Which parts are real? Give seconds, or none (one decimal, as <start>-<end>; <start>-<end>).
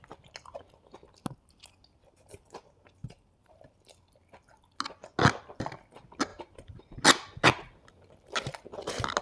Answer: 0.0-3.0; 3.6-6.3; 6.8-9.2